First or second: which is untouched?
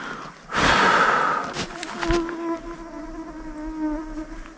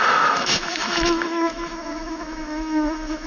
first